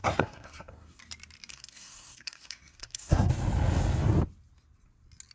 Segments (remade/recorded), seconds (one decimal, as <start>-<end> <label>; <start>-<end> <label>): 0.0-1.0 remade; 1.0-1.5 recorded; 1.5-3.3 remade; 3.3-5.3 recorded

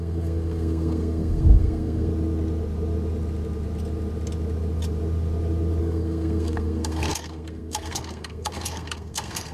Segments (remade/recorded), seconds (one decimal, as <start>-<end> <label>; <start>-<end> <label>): 0.0-2.1 remade; 2.1-5.8 recorded; 5.8-9.5 remade

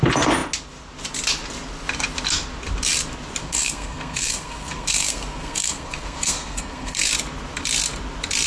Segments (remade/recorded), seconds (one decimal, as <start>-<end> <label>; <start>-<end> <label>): 0.0-3.4 recorded; 3.4-7.1 remade; 7.1-8.5 recorded

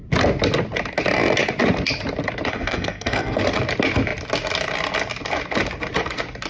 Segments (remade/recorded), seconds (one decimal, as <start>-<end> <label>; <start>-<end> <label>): 0.0-2.5 recorded; 2.5-3.4 remade; 3.4-6.5 recorded